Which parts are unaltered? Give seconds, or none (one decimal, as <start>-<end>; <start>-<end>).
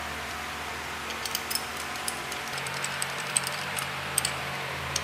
0.7-1.7